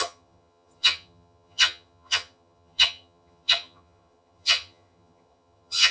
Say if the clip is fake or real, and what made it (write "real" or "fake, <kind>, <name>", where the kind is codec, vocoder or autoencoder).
fake, vocoder, HiFi-GAN